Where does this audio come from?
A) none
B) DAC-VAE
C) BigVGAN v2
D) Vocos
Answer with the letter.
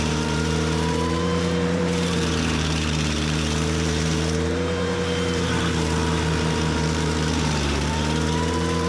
C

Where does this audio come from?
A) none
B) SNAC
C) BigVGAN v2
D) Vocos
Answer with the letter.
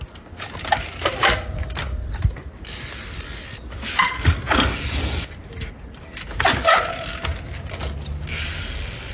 A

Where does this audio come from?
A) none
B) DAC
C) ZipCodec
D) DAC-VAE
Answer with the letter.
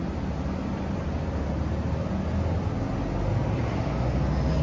A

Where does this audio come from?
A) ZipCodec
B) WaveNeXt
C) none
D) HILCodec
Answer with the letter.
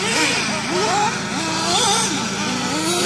C